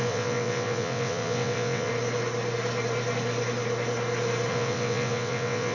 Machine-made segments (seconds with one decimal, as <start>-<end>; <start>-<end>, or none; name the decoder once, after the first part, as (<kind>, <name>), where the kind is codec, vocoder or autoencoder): 0.0-1.9 (vocoder, WaveNeXt); 4.5-5.7